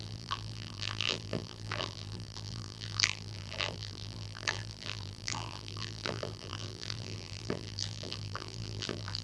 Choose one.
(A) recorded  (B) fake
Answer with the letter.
B